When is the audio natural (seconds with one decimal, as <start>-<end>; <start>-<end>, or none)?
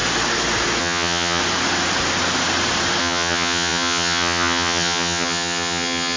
0.0-0.8; 1.4-3.0